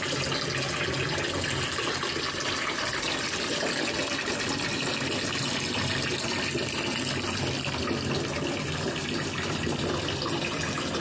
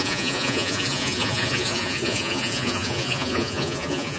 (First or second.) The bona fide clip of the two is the first